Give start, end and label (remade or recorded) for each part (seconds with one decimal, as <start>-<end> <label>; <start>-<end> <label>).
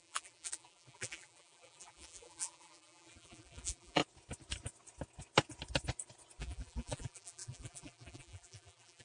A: 0.0-4.0 remade; 4.0-6.4 recorded; 6.4-9.0 remade